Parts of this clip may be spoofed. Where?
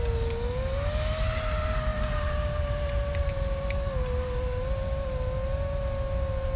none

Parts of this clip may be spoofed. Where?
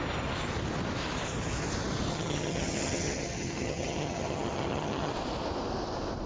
2.1-5.1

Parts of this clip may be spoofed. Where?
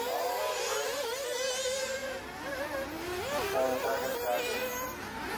none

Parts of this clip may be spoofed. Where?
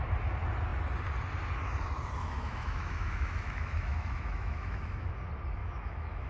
2.2-5.1; 5.6-6.3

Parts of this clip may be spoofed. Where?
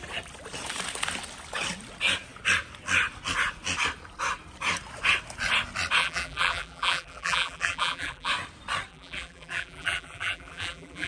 6.0-8.3; 8.9-11.1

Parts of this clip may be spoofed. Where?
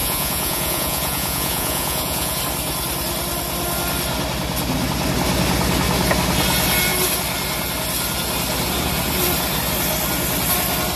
0.0-2.4